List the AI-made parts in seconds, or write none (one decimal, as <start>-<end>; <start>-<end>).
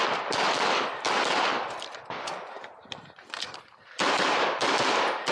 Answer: none